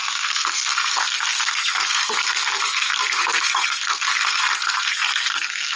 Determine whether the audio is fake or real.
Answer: fake